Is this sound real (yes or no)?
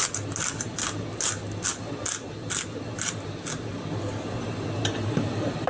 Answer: yes